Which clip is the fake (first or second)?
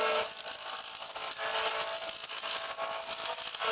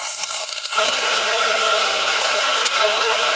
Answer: second